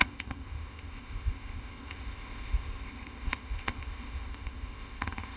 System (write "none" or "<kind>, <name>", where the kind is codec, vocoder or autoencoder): codec, ZipCodec